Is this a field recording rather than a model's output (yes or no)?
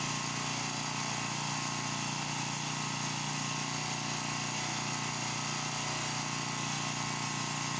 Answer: yes